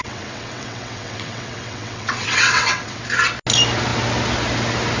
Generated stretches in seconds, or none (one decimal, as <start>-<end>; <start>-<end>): 0.0-3.0